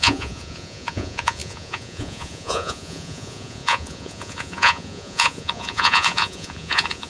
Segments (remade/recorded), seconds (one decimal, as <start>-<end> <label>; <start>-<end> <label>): 0.0-7.1 remade